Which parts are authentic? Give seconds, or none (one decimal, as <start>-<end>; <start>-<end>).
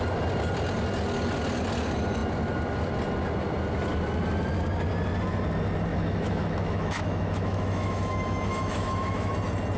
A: 0.0-5.9; 9.3-9.8